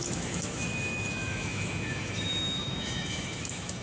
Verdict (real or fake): fake